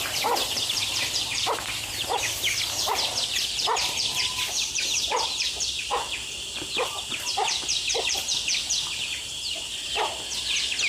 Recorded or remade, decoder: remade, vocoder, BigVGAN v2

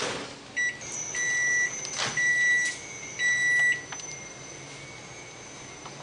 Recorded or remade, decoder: recorded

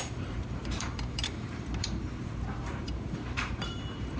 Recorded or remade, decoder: remade, vocoder, BigVGAN v2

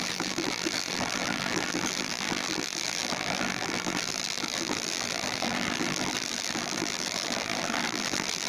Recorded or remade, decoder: remade, vocoder, BigVGAN v2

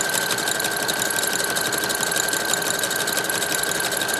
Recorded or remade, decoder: recorded